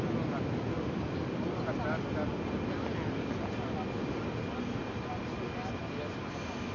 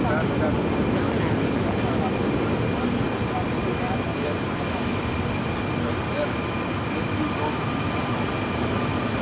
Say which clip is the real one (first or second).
first